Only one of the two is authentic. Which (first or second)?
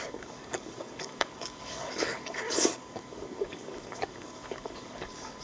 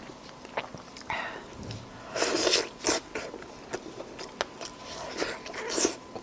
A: second